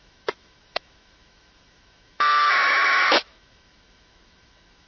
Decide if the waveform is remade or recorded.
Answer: remade